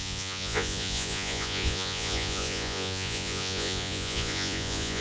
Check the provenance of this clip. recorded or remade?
remade